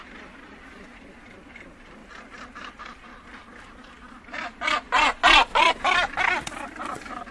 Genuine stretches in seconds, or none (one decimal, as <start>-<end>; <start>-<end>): 0.0-7.3